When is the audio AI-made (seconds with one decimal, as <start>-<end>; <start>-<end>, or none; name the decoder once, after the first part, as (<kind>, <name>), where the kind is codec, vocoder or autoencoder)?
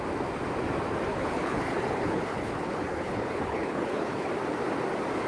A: 1.1-4.3 (codec, HILCodec)